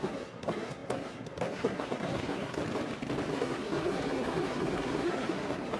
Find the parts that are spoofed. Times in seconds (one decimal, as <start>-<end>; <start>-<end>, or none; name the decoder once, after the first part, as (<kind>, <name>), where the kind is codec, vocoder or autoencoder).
0.0-2.6 (codec, SNAC); 3.3-5.8